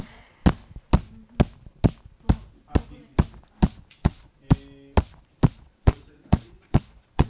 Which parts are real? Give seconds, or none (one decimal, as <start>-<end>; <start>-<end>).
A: 0.4-3.9; 4.4-5.5